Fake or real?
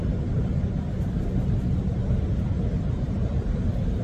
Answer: real